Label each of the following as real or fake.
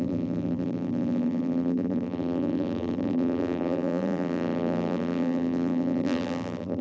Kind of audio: fake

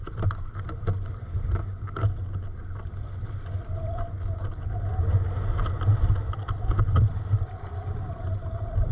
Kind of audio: real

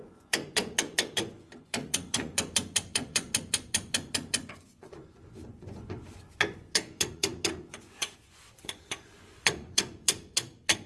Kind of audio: fake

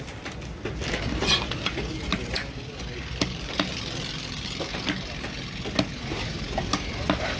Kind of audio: real